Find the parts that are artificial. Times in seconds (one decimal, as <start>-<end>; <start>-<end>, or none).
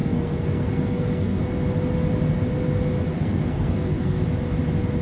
0.0-1.4; 3.1-4.2